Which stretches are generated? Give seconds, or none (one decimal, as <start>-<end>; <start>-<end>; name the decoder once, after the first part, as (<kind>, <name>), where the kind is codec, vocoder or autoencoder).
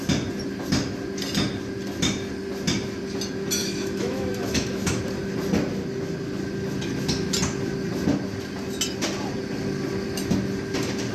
3.6-5.0 (autoencoder, DAC-VAE)